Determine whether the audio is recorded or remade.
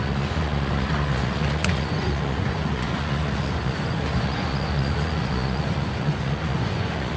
remade